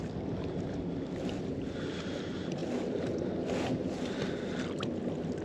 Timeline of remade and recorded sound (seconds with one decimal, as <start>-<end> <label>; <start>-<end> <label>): 0.0-5.4 recorded